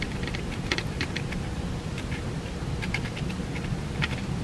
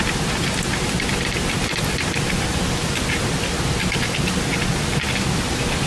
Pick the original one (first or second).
second